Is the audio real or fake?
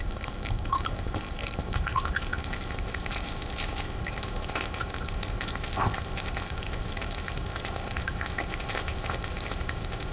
fake